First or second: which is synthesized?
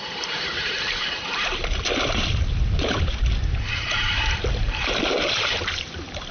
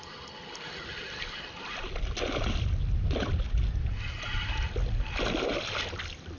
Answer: first